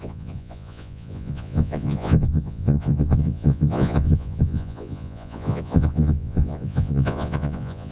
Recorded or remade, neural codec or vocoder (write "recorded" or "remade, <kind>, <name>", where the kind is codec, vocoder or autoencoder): remade, vocoder, Vocos